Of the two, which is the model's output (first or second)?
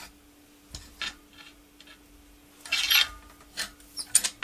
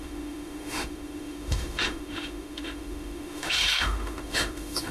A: second